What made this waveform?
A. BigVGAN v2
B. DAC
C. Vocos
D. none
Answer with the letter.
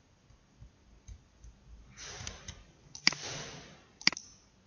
D